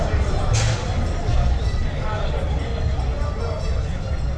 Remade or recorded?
recorded